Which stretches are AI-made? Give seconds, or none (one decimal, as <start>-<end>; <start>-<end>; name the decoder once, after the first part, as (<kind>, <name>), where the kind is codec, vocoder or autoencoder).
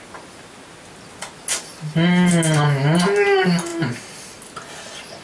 none